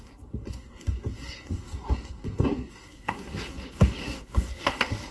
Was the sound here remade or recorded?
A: remade